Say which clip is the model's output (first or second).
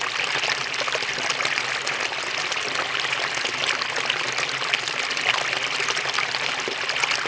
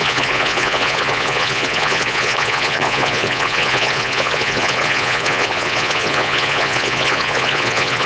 second